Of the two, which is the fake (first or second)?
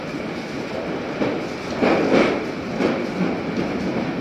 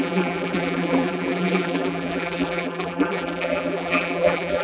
second